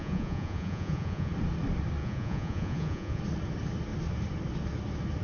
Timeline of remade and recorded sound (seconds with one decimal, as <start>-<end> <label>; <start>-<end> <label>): 0.0-1.3 remade; 1.3-2.0 recorded; 2.0-3.2 remade; 3.2-5.2 recorded